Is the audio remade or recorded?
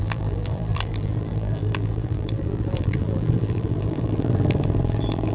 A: remade